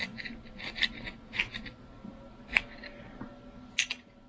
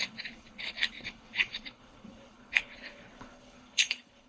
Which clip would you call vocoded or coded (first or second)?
second